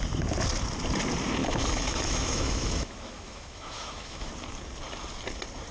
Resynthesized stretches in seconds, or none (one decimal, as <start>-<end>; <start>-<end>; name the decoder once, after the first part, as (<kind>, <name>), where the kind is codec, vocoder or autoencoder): 1.4-4.3 (autoencoder, DAC-VAE)